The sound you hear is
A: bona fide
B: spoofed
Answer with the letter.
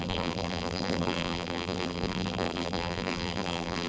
B